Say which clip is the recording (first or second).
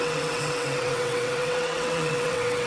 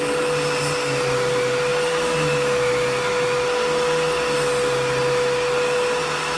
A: second